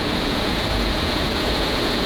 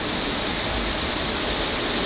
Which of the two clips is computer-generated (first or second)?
first